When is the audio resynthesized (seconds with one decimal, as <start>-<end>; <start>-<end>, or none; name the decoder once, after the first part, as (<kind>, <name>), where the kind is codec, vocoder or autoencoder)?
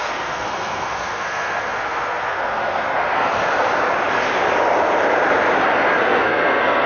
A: 0.0-3.3 (codec, SNAC); 6.0-6.9